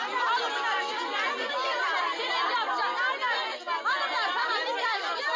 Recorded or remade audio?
recorded